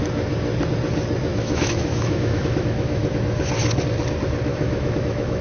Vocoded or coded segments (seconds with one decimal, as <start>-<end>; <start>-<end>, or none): 1.2-3.0; 4.5-5.4